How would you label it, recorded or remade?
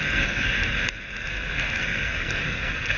remade